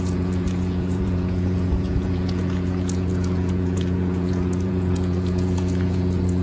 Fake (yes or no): yes